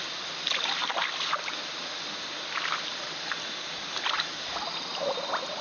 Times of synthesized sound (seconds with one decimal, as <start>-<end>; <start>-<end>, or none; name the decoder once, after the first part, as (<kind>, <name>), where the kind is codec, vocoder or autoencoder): none